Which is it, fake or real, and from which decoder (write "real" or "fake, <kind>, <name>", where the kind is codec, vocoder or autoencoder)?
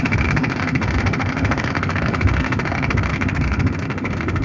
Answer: fake, autoencoder, DAC-VAE